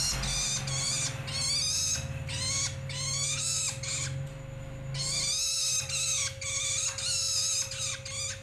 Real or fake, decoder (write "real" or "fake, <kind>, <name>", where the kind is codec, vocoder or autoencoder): real